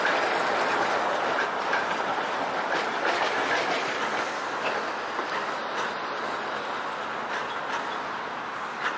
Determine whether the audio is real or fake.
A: real